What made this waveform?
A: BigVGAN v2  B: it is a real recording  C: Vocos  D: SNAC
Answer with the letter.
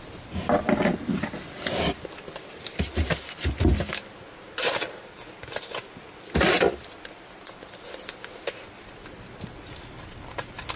B